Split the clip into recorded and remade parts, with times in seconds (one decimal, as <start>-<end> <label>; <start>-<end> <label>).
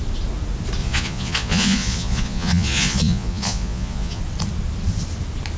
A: 0.0-0.8 recorded; 0.8-4.2 remade; 4.2-5.6 recorded